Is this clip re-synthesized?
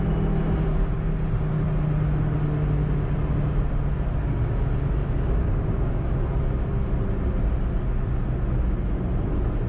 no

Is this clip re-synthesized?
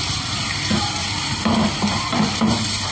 yes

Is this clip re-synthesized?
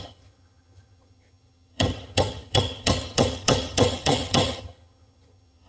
yes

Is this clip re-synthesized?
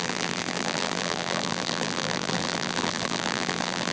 yes